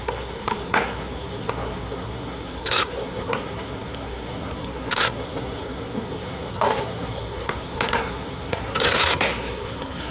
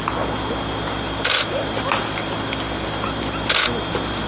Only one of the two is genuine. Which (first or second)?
second